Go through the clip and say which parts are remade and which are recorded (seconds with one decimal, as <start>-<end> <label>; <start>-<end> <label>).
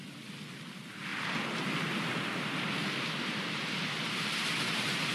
0.0-1.1 recorded; 1.1-2.1 remade; 2.1-5.1 recorded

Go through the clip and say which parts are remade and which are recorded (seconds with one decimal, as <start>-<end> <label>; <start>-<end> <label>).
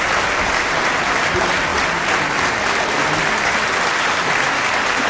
0.0-5.1 recorded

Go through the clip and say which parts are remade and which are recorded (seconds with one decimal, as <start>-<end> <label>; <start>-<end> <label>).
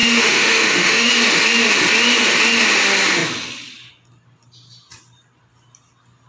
0.0-1.1 remade; 1.1-6.3 recorded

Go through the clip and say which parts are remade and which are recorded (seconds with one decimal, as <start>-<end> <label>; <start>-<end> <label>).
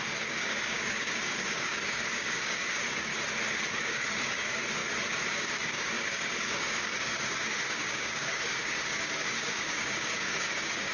0.0-3.1 remade; 3.1-3.7 recorded; 3.7-4.8 remade; 4.8-5.3 recorded; 5.3-10.9 remade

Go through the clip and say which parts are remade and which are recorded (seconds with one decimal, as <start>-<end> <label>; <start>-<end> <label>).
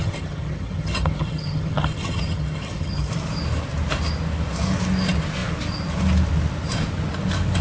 0.0-3.1 remade; 3.1-7.6 recorded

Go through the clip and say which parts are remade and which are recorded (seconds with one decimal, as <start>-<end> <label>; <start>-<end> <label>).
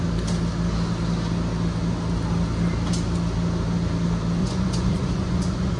0.0-4.4 recorded; 4.4-5.8 remade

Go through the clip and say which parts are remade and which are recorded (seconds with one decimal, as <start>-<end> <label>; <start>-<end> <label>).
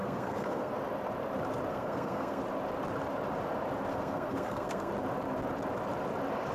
0.0-0.7 remade; 0.7-1.7 recorded; 1.7-2.4 remade; 2.4-3.9 recorded; 3.9-4.9 remade; 4.9-6.5 recorded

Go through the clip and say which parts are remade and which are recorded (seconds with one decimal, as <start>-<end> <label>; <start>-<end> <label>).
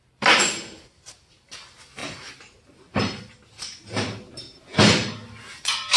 0.0-6.0 recorded